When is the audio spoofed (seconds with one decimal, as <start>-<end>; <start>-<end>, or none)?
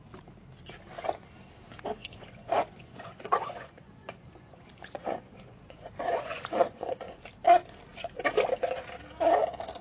2.0-7.2